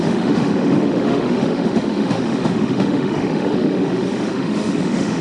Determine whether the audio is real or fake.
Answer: fake